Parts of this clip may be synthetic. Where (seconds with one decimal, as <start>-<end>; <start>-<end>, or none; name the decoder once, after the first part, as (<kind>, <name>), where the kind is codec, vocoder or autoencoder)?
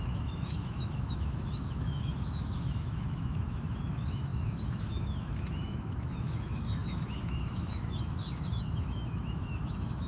0.0-10.1 (autoencoder, DAC-VAE)